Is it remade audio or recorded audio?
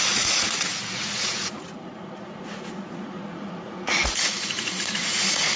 remade